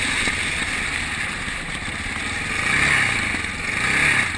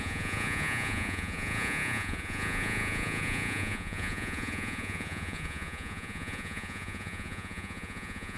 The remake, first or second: second